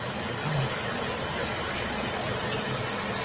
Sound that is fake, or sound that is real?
real